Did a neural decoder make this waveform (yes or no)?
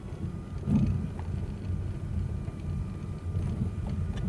no